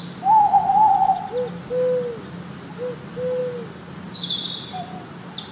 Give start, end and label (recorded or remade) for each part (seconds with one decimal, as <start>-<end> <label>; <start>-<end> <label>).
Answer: 0.0-3.4 recorded; 3.4-4.8 remade; 4.8-5.5 recorded